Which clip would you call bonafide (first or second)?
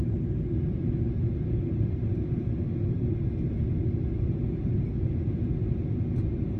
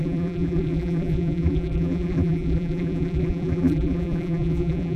first